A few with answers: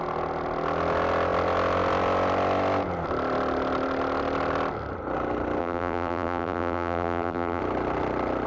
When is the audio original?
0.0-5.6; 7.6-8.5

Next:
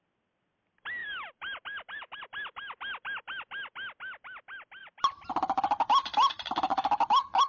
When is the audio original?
0.0-1.0; 2.2-4.8; 5.3-7.5

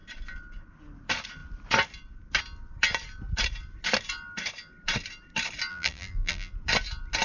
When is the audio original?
0.0-5.7; 6.5-7.2